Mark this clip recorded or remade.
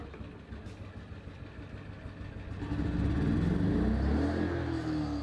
recorded